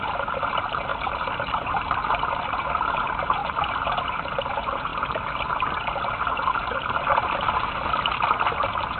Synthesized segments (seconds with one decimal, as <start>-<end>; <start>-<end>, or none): none